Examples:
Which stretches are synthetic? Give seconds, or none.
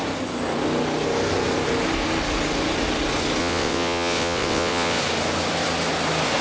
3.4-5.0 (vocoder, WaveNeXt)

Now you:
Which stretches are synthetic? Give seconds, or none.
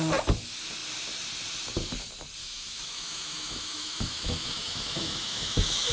2.4-5.9 (autoencoder, DAC-VAE)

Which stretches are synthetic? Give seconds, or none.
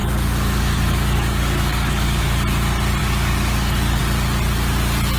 0.0-2.2 (codec, DAC); 3.0-4.0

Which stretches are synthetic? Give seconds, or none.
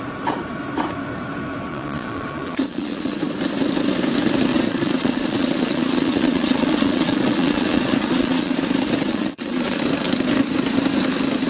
1.7-3.2 (vocoder, Vocos); 4.5-8.6; 9.1-9.8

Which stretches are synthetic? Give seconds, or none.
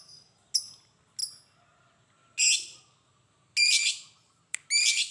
none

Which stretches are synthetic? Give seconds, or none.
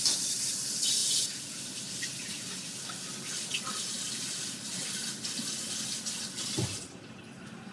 1.0-1.6 (vocoder, Vocos)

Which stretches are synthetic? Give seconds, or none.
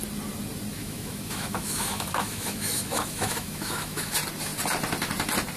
0.7-4.1 (autoencoder, DAC-VAE)